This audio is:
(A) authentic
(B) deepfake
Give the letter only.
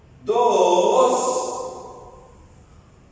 A